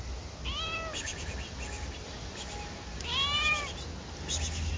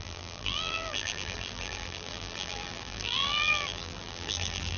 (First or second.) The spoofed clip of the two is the second